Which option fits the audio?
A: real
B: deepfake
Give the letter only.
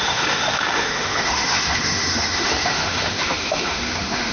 B